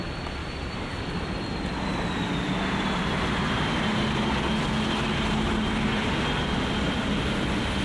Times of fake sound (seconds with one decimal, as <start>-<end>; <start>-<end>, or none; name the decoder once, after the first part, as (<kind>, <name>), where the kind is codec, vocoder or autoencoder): 0.4-1.1 (vocoder, BigVGAN v2)